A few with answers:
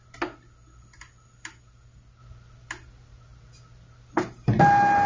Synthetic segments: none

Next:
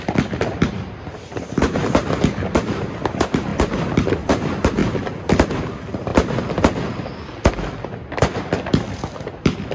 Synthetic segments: 0.0-4.8 (vocoder, BigVGAN v2); 5.5-6.1

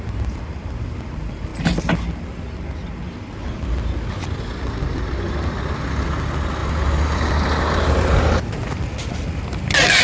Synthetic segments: none

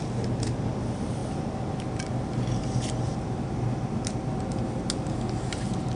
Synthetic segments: none

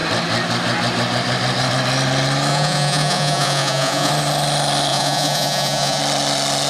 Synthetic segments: 2.5-4.1 (vocoder, Vocos); 4.9-6.0

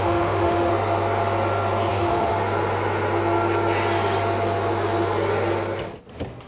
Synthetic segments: 0.0-0.7 (autoencoder, DAC-VAE); 1.9-2.3

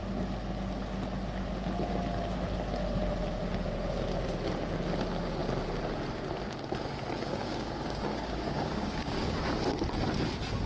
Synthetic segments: 7.3-9.4 (codec, DAC)